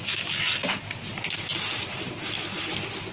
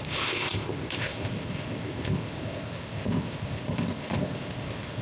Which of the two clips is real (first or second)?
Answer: first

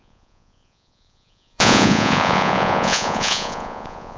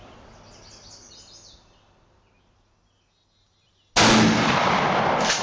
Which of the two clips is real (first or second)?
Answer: second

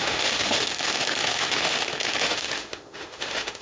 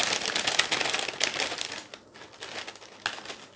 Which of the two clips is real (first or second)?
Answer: second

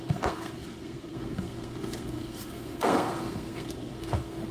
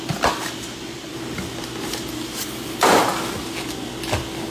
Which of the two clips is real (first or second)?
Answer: second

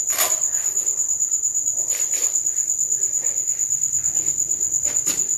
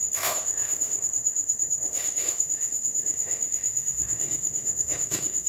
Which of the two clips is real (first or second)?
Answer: first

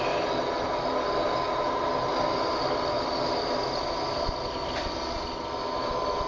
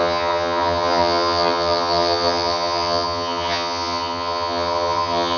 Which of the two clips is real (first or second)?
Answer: first